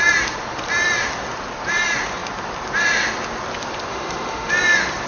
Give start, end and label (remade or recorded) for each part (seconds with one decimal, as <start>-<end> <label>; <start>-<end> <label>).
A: 0.0-3.9 recorded; 3.9-4.5 remade; 4.5-5.1 recorded